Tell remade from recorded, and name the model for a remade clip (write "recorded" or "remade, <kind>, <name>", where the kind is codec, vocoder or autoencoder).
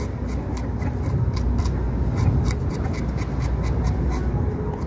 recorded